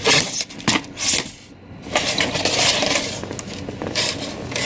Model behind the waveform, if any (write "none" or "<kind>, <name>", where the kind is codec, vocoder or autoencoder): none